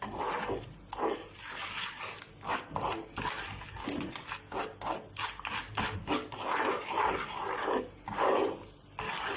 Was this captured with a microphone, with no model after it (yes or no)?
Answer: yes